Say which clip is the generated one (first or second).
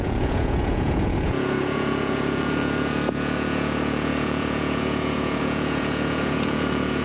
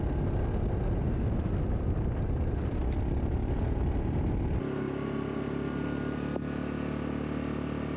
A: first